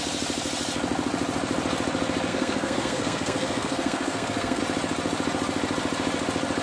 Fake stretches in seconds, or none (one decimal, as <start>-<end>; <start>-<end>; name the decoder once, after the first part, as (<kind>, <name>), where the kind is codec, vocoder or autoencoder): 2.3-4.6 (codec, SNAC)